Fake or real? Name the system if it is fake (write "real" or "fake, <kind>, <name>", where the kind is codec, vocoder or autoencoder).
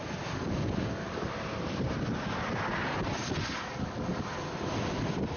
real